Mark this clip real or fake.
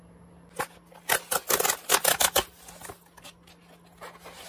real